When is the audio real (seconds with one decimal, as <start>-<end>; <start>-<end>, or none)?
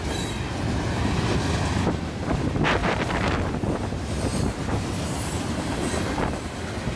0.0-2.8; 3.5-4.3; 5.8-7.0